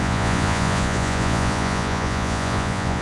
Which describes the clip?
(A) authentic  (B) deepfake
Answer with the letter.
B